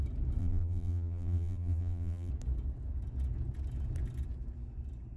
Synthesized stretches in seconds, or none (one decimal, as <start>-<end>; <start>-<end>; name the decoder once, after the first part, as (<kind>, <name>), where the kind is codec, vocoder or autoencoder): 0.4-2.3 (vocoder, BigVGAN v2)